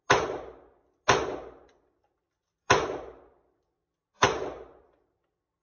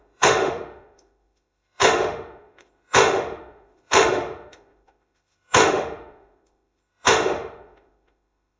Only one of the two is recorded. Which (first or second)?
first